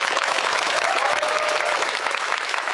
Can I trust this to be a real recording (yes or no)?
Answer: no